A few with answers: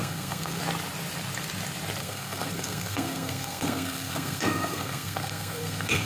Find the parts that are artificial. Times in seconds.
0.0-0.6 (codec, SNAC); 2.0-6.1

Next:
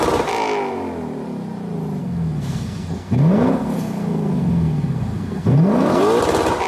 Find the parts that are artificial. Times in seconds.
2.0-6.0 (codec, SNAC)

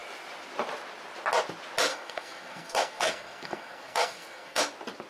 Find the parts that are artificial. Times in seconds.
1.9-4.6 (codec, SNAC)

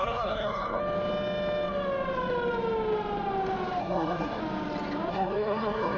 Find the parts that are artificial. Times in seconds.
0.0-0.8 (codec, SNAC); 3.8-4.4; 5.1-6.0

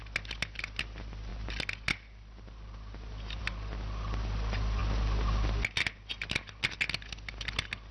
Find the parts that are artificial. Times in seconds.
none